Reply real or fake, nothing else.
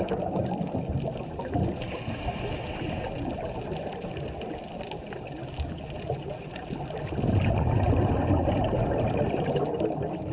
real